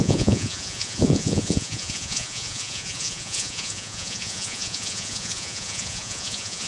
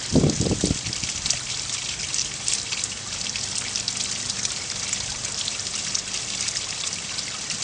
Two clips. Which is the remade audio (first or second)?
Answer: first